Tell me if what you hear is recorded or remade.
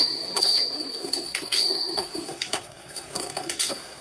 remade